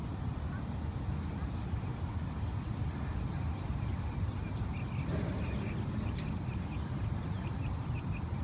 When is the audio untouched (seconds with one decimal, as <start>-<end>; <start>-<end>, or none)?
0.0-8.4